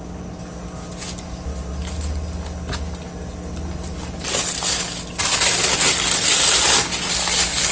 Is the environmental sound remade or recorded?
recorded